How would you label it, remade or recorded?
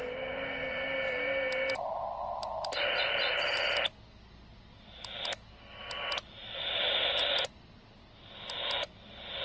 recorded